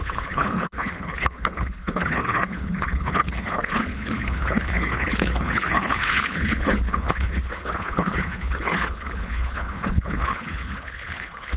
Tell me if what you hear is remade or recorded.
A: remade